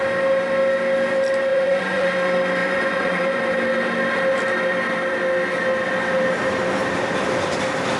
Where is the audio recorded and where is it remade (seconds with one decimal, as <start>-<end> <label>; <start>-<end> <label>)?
0.0-1.5 recorded; 1.5-2.1 remade; 2.1-2.6 recorded; 2.6-3.4 remade; 3.4-8.0 recorded